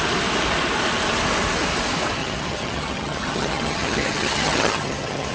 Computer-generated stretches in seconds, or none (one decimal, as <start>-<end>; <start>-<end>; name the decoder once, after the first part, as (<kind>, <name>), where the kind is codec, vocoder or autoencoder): 2.2-5.3 (vocoder, HiFi-GAN)